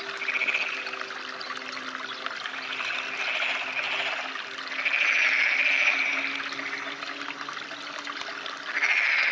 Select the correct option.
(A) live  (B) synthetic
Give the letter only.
A